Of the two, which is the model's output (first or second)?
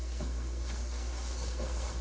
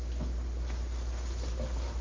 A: first